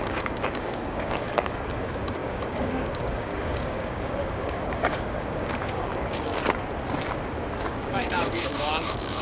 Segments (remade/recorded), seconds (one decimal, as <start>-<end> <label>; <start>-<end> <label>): 0.0-6.3 remade; 6.3-7.6 recorded; 7.6-9.2 remade